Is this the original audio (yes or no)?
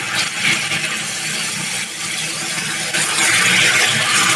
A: yes